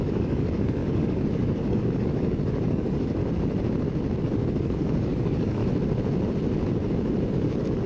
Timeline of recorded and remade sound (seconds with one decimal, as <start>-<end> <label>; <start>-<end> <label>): 0.0-3.2 remade; 3.2-4.2 recorded; 4.2-5.6 remade; 5.6-7.3 recorded; 7.3-7.9 remade